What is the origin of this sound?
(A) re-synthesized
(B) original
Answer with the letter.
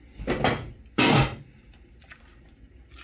B